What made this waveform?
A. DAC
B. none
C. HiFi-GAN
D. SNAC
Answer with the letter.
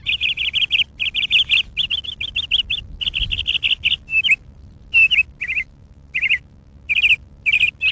B